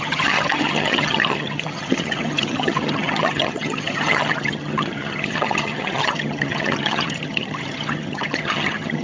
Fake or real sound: fake